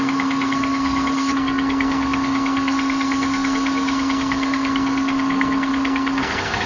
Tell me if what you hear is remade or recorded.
remade